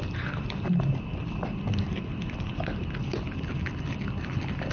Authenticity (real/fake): real